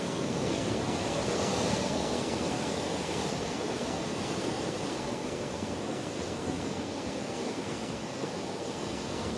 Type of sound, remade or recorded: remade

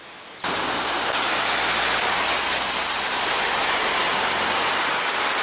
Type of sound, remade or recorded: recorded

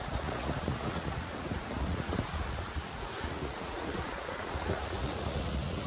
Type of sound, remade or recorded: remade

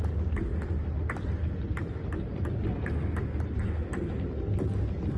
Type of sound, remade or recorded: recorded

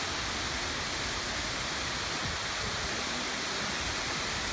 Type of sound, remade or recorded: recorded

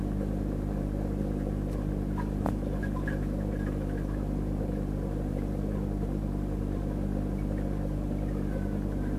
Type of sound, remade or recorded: remade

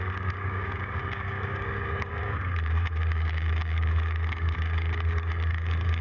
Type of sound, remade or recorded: remade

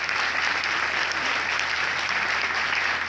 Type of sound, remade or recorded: recorded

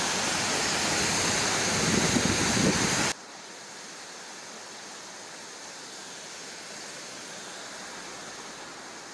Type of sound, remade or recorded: recorded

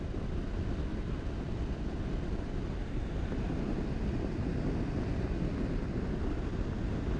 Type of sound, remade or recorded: recorded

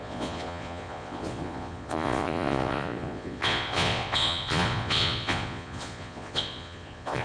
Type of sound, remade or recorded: remade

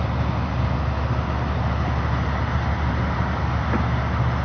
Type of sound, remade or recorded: recorded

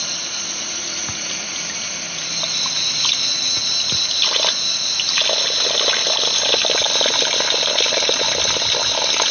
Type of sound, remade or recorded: recorded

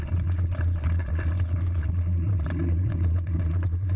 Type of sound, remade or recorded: remade